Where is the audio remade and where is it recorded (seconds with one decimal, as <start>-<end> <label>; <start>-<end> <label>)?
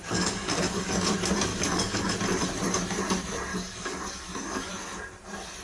0.0-1.1 remade; 1.1-1.5 recorded; 1.5-2.1 remade; 2.1-3.5 recorded; 3.5-4.7 remade; 4.7-5.6 recorded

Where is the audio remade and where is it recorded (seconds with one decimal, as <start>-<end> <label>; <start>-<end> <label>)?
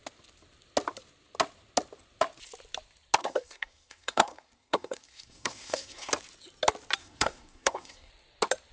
0.0-3.2 recorded; 3.2-6.1 remade; 6.1-7.0 recorded; 7.0-8.1 remade; 8.1-8.7 recorded